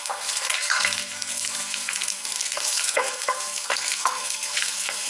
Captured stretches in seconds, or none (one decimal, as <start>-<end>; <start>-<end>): none